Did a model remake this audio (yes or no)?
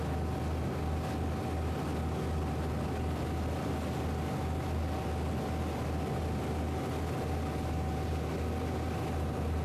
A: no